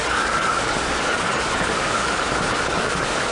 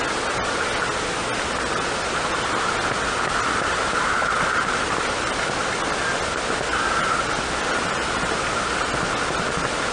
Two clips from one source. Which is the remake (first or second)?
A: first